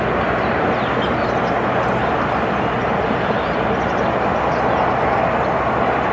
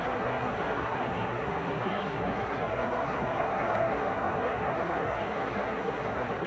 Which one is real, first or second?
first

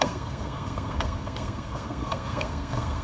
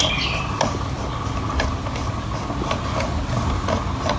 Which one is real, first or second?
second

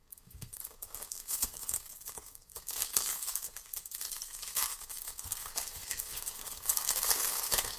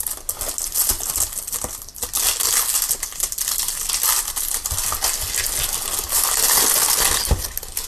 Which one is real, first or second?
second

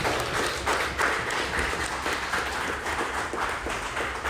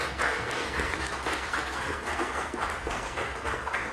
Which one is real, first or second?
first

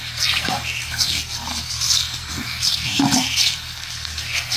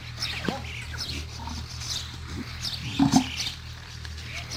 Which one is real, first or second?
second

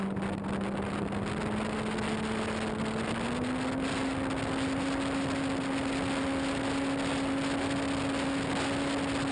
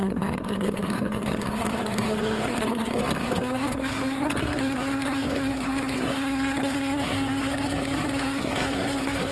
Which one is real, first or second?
first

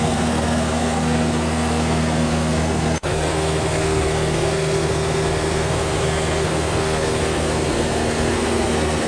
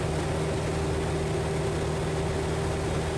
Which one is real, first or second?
second